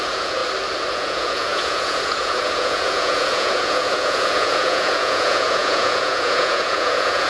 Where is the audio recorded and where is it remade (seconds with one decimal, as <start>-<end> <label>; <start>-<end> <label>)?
0.0-0.4 remade; 0.4-0.9 recorded; 0.9-7.3 remade